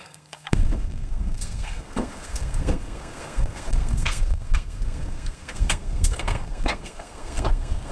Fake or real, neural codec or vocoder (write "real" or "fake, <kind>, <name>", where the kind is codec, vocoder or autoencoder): fake, codec, SNAC